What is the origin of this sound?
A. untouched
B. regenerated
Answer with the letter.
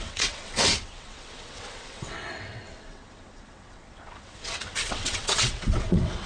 B